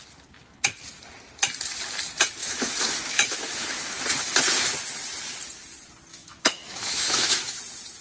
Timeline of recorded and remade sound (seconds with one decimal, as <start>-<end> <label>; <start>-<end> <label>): 0.0-2.4 recorded; 2.4-3.9 remade; 3.9-6.1 recorded; 6.1-7.6 remade; 7.6-8.0 recorded